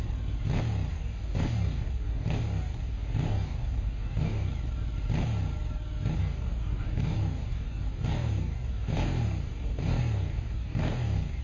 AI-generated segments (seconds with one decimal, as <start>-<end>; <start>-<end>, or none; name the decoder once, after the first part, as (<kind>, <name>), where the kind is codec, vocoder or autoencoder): 0.9-4.5 (codec, DAC); 6.2-11.4